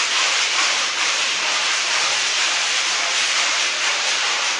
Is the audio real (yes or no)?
no